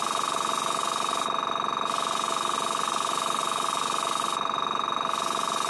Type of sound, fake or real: real